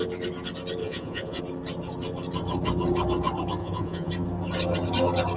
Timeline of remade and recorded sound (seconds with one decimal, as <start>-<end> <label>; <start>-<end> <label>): 0.0-0.8 recorded; 0.8-1.4 remade; 1.4-3.6 recorded; 3.6-4.1 remade; 4.1-5.4 recorded